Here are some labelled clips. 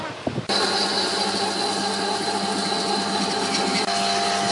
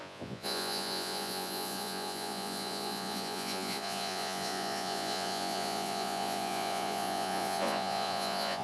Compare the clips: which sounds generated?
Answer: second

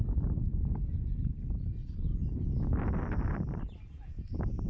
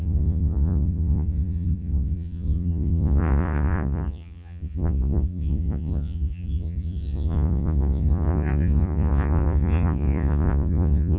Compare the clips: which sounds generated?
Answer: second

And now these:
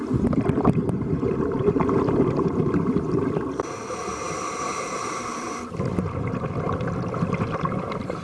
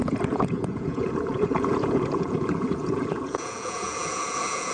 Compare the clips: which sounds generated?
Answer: second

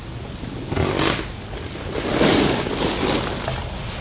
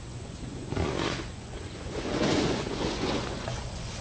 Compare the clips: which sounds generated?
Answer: second